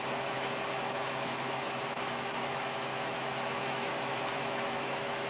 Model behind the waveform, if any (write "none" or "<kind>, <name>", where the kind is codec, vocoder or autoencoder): autoencoder, DAC-VAE